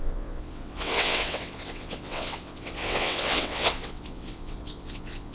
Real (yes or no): no